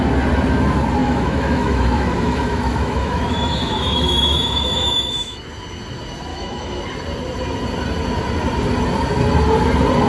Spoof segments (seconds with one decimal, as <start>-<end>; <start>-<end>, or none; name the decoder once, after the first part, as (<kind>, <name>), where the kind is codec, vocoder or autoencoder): 1.0-5.4 (autoencoder, DAC-VAE); 6.3-6.8